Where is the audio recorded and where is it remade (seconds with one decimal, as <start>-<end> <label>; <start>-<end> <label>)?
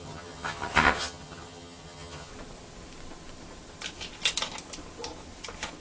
0.0-2.3 remade; 2.3-5.8 recorded